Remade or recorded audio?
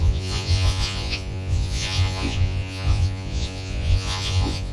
remade